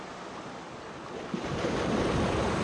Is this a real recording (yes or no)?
yes